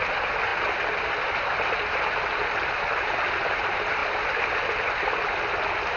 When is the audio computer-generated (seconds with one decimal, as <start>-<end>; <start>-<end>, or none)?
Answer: 4.0-4.9